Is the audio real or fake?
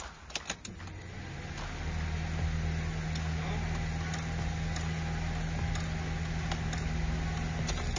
real